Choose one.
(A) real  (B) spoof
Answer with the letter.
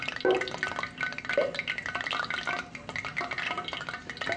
A